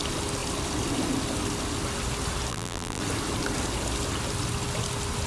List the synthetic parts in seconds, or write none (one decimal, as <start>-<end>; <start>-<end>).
2.5-3.0